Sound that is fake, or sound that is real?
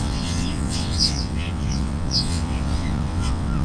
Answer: fake